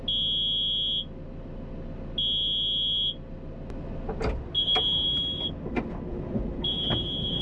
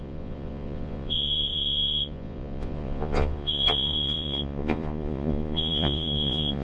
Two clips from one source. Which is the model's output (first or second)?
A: second